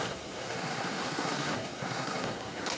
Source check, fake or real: fake